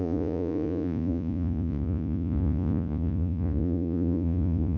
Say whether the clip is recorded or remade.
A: remade